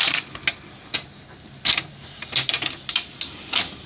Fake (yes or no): no